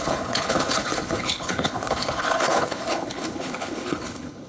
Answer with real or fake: fake